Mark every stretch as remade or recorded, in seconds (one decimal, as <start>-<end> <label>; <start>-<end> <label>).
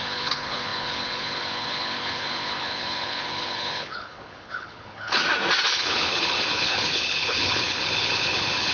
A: 0.0-5.2 remade; 5.2-5.7 recorded; 5.7-8.7 remade